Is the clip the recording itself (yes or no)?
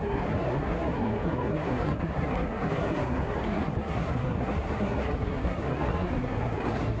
no